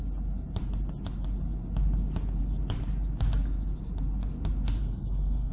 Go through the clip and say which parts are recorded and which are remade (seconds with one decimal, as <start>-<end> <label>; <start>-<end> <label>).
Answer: 0.0-4.8 recorded; 4.8-5.5 remade